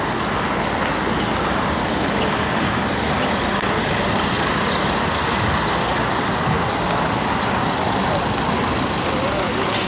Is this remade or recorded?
recorded